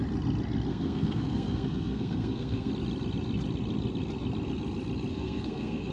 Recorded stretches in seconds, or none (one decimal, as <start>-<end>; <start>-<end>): 0.0-0.7; 2.7-5.1